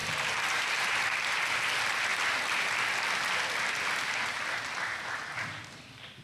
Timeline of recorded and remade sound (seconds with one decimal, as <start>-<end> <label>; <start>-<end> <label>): 0.0-1.0 remade; 1.0-6.2 recorded

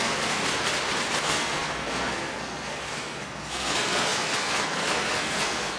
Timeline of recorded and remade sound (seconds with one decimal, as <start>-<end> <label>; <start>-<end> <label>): 0.0-0.4 remade; 0.4-1.2 recorded; 1.2-5.8 remade